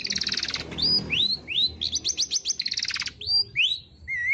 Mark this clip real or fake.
real